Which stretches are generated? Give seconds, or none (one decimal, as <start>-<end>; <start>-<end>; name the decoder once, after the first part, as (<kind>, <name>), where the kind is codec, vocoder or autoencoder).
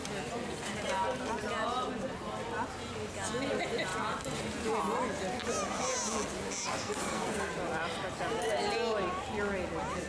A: 6.7-7.5 (codec, SNAC)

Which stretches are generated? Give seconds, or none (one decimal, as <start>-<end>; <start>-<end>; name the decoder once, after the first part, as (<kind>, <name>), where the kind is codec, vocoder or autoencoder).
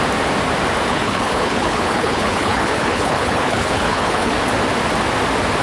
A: 0.9-4.3 (codec, HILCodec)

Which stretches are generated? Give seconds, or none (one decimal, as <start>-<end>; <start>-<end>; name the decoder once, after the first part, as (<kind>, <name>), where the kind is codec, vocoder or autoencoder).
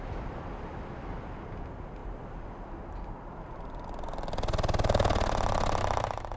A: none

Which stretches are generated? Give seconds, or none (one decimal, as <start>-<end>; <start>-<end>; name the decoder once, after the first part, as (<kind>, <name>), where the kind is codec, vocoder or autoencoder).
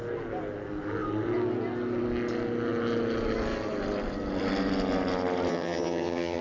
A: 5.5-6.4 (vocoder, HiFi-GAN)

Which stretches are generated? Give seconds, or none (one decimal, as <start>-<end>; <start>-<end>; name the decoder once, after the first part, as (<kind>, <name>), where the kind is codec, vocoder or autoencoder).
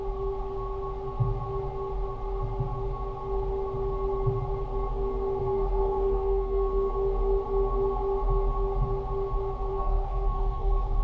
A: 5.4-6.9 (codec, SNAC); 9.7-11.0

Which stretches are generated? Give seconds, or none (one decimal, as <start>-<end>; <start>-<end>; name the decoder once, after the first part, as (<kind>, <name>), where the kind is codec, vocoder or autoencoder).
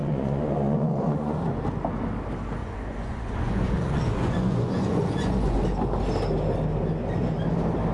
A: 0.0-1.4 (vocoder, Vocos); 2.6-5.6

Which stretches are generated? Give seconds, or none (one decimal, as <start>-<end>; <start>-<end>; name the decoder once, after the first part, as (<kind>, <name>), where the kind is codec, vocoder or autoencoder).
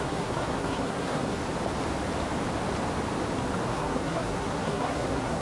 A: 0.0-1.4 (codec, SNAC); 3.7-5.4